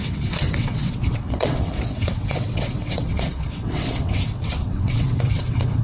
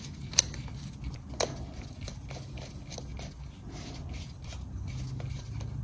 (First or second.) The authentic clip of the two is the second